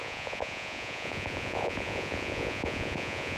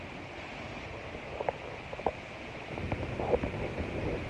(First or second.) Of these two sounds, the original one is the second